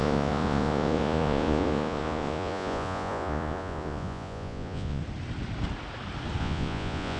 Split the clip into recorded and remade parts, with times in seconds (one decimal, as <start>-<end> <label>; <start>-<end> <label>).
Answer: 0.0-5.0 remade; 5.0-6.4 recorded; 6.4-7.2 remade